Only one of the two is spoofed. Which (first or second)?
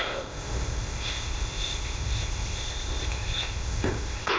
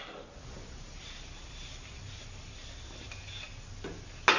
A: first